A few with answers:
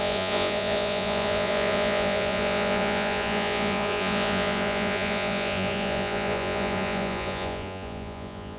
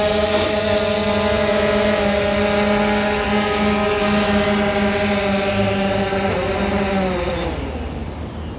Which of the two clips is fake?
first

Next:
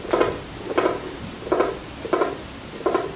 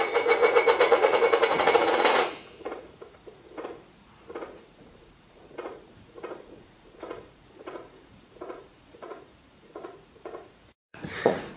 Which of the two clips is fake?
second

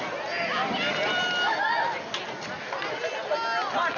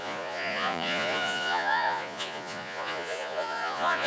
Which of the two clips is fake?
second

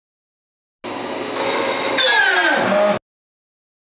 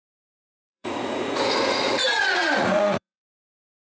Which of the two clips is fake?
second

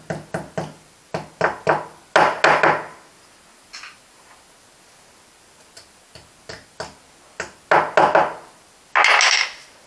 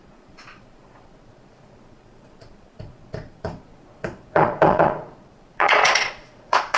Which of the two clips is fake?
second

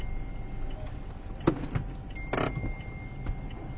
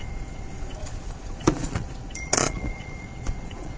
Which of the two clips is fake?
second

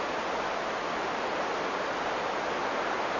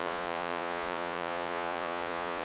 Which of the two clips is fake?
second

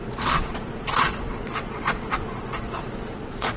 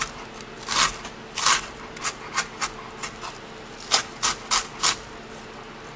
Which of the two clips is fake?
first